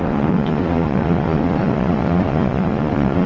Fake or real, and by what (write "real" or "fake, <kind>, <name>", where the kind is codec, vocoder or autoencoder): fake, vocoder, Vocos